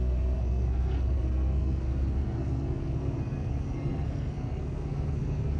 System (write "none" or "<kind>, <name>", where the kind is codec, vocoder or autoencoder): codec, SNAC